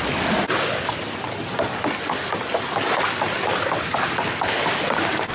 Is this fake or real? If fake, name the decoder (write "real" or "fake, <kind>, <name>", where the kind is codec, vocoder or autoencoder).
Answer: real